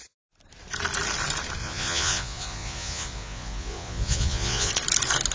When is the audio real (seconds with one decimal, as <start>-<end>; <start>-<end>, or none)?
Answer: 0.0-1.6; 4.7-5.3